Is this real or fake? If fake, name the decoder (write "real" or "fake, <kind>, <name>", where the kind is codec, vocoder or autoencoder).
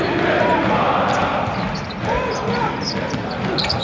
real